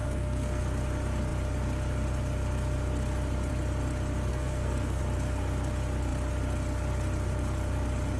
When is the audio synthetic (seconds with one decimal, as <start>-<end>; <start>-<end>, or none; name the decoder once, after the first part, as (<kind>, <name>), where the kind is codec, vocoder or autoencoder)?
0.0-0.6 (codec, SNAC); 4.3-5.0